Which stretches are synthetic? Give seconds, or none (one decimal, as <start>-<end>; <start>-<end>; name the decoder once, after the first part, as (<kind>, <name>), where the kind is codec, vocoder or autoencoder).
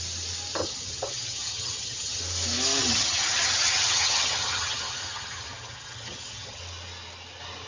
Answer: 0.6-2.2 (vocoder, HiFi-GAN); 2.8-6.6